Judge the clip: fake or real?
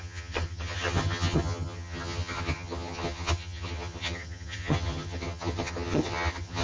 fake